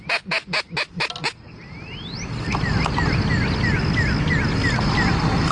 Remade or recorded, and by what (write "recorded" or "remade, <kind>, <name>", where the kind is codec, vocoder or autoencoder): recorded